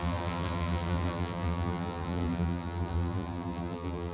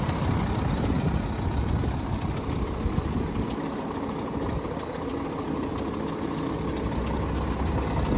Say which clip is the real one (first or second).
second